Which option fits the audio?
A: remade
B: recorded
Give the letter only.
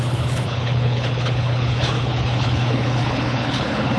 A